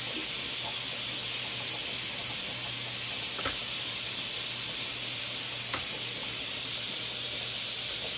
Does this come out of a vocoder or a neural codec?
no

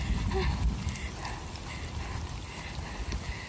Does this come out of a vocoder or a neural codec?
no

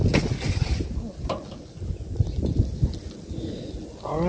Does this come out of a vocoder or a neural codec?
no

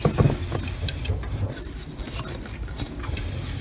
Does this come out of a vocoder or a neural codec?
no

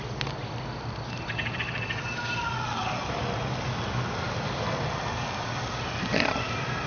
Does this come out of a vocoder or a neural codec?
no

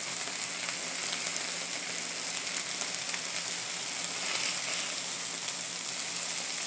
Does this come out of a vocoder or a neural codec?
no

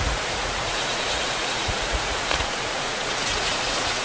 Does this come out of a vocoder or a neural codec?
yes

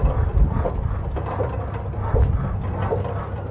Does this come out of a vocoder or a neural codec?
no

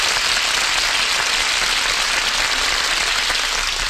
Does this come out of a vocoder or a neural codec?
no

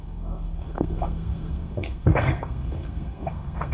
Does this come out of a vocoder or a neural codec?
yes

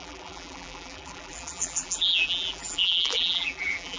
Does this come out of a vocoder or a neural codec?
yes